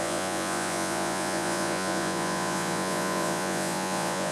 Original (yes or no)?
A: no